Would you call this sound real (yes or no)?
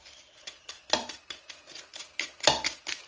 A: yes